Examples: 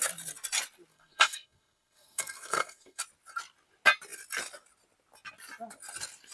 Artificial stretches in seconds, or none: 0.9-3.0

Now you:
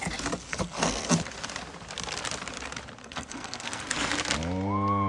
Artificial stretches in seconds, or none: 0.5-1.1; 3.0-4.1

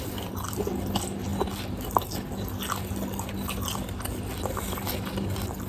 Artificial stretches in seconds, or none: none

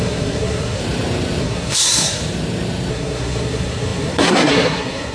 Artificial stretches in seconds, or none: 0.0-0.8; 1.4-2.2; 2.9-5.1

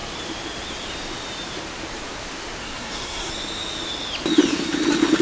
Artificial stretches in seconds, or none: 2.6-3.3

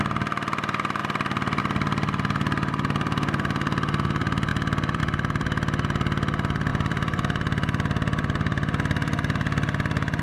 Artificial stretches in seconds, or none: 1.0-1.6; 4.5-5.0; 6.7-10.2

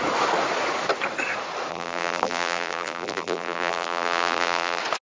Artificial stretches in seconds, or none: 1.7-4.8

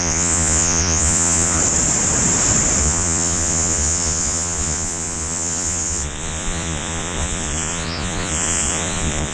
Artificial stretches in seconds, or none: 0.0-1.6; 2.8-9.3